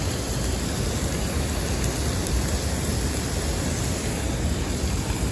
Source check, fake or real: real